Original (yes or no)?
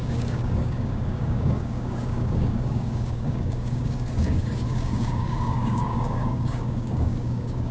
no